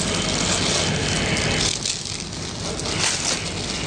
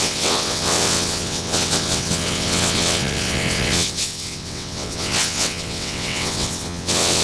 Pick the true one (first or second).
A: first